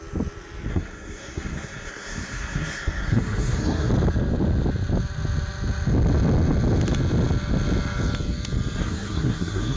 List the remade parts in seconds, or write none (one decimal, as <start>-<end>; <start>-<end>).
0.7-3.9; 8.8-9.8